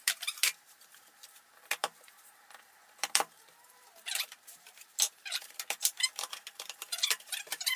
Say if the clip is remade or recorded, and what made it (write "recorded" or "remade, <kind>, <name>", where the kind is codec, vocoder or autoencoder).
remade, vocoder, BigVGAN v2